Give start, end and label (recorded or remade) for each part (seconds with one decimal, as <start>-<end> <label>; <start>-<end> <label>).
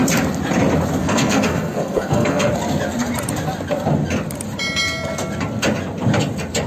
0.0-1.0 recorded; 1.0-2.5 remade; 2.5-6.7 recorded